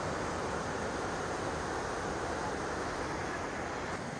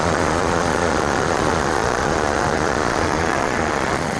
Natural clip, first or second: first